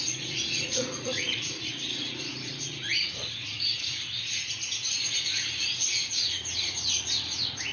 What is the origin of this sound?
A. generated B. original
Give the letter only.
A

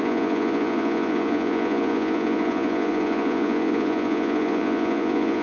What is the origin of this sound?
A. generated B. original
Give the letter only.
A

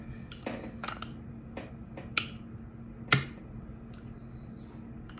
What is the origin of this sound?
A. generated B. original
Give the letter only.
B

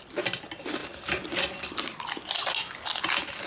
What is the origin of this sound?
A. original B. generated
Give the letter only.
A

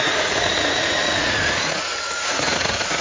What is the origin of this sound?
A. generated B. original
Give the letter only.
A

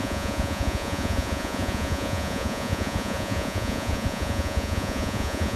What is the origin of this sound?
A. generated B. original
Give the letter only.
A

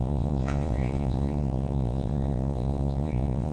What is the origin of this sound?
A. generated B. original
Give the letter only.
A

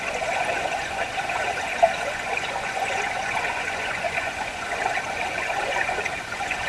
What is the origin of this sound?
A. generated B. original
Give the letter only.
A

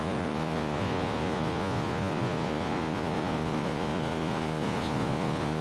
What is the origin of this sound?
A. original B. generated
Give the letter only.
B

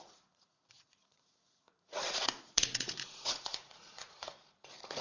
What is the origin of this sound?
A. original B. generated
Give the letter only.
B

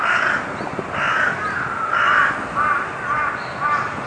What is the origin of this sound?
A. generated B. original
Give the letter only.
B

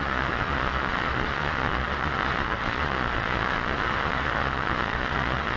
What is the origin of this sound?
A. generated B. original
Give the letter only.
A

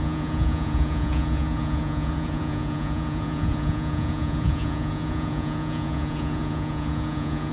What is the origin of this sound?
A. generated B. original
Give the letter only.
A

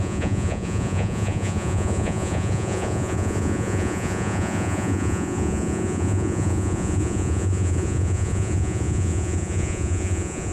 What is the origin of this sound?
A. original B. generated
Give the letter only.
B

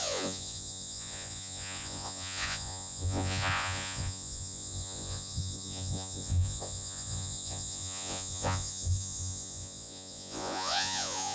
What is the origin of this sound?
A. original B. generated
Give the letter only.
B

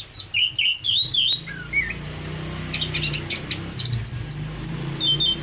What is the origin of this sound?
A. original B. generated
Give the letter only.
A